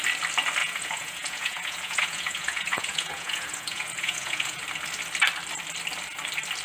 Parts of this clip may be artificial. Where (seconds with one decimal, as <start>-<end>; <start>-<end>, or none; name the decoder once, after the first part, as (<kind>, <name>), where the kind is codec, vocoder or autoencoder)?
0.6-4.6 (vocoder, Vocos)

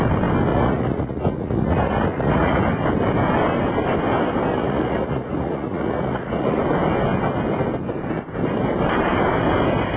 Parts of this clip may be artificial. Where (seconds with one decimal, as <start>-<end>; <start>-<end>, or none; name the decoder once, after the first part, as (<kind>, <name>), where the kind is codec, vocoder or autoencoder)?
0.5-2.6 (vocoder, Vocos); 4.5-6.6

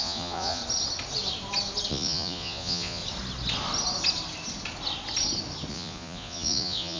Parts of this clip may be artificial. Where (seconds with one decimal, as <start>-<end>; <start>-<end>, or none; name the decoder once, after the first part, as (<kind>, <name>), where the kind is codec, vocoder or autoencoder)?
0.0-0.6 (vocoder, Vocos); 1.9-3.0; 5.7-7.0

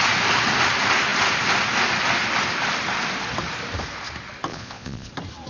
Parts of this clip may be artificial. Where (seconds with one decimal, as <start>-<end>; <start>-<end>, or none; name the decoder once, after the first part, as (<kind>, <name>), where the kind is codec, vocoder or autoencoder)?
4.5-5.1 (vocoder, Vocos)

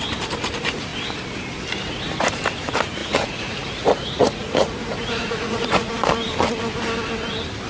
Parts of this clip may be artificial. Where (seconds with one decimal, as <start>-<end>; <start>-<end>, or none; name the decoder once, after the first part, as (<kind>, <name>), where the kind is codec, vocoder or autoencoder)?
3.0-5.9 (vocoder, Vocos)